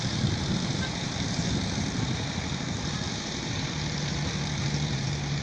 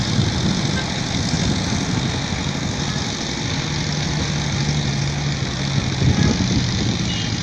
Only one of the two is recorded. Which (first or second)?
second